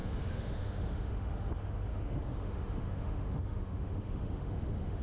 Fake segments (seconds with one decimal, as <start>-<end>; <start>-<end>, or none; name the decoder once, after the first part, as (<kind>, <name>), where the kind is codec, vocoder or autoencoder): 0.0-1.5 (autoencoder, DAC-VAE); 1.9-5.0